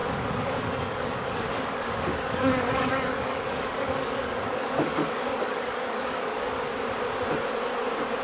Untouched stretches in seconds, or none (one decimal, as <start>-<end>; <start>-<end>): 6.7-8.2